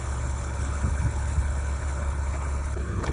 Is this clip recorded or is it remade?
remade